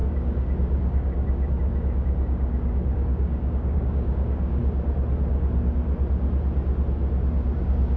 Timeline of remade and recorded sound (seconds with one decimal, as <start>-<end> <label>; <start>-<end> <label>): 0.0-4.6 remade; 4.6-7.6 recorded; 7.6-8.0 remade